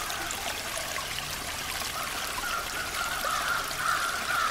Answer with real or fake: real